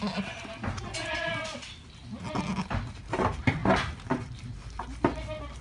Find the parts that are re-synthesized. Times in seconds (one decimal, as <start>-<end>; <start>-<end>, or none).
none